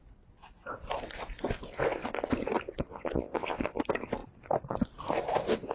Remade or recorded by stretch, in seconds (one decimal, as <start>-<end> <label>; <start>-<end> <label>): 0.0-2.9 recorded; 2.9-3.8 remade; 3.8-5.7 recorded